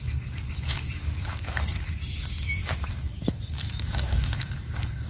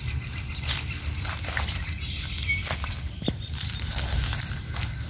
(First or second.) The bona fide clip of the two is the second